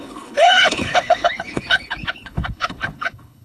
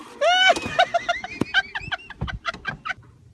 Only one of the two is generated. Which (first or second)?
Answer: first